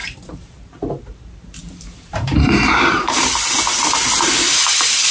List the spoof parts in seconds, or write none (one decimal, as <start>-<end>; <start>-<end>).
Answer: 0.0-1.2; 1.6-4.3

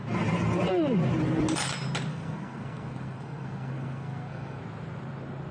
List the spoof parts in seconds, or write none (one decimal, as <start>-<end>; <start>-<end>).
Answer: 2.1-4.6

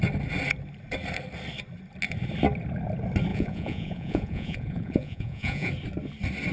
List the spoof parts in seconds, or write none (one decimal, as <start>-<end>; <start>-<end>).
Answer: 3.3-5.7

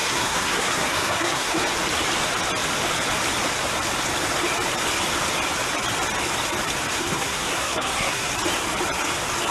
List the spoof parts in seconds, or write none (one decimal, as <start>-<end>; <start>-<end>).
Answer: 0.0-1.6; 6.9-8.3